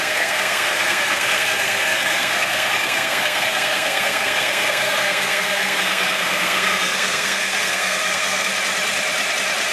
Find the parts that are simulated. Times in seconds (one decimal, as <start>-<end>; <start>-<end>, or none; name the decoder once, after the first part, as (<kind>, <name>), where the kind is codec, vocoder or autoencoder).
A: 0.0-8.5 (codec, SNAC)